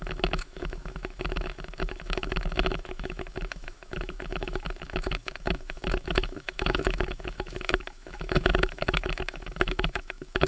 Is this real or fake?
fake